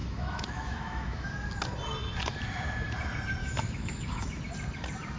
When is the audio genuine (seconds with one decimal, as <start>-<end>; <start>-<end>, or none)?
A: 1.3-3.4; 4.4-5.2